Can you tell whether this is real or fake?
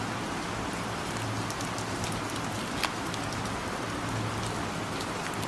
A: real